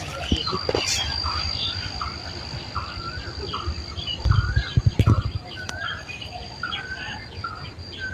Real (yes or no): yes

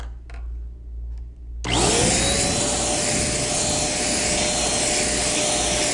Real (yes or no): yes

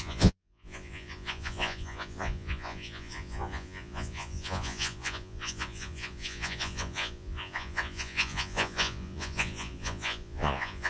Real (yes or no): no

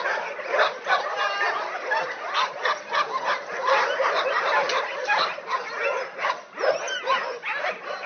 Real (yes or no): yes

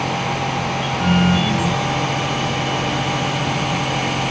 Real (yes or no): yes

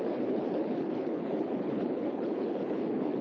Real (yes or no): no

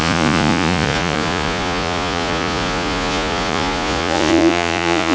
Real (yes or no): no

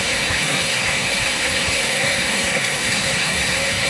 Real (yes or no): no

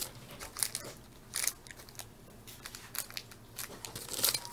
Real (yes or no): yes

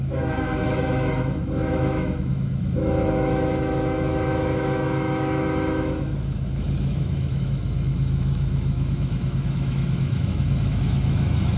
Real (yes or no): no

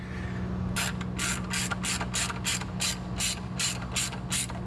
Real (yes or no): yes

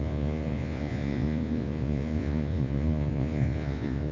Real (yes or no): no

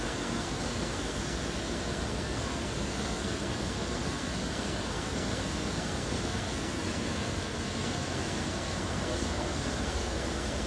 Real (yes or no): no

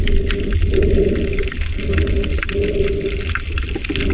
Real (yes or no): yes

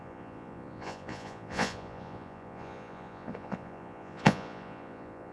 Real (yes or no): no